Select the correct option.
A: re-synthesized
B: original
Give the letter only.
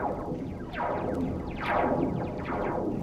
A